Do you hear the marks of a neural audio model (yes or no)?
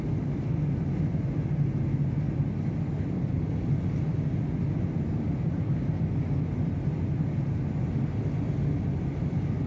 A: no